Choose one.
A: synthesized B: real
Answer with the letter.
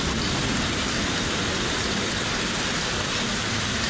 B